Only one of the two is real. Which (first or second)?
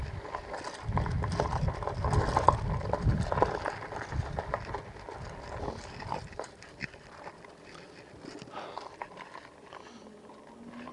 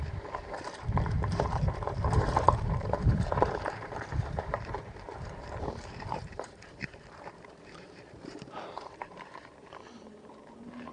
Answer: first